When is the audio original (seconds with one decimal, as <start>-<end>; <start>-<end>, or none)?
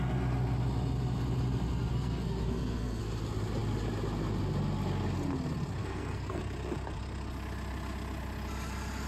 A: 0.0-1.9; 3.0-5.8; 6.4-9.1